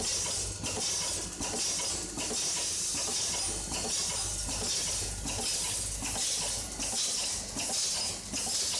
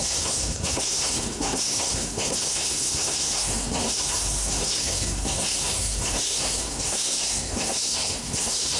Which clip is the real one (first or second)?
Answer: first